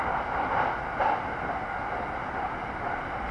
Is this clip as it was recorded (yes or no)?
yes